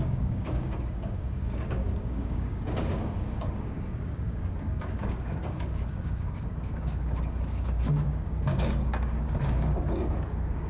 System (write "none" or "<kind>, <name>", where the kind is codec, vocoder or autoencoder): codec, DAC